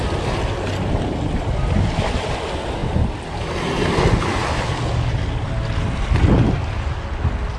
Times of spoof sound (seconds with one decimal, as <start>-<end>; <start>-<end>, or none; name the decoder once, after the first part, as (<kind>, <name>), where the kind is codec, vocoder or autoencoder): none